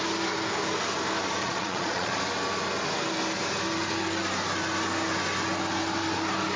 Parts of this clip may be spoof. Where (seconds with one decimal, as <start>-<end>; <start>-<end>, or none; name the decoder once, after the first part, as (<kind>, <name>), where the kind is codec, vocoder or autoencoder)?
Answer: 1.4-2.2 (vocoder, Vocos)